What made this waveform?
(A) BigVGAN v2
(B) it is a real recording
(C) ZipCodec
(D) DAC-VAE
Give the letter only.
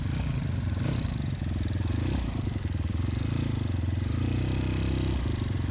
A